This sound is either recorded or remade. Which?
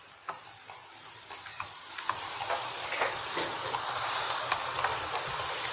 recorded